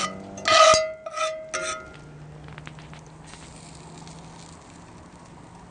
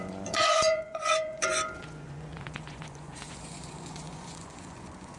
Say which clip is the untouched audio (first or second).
first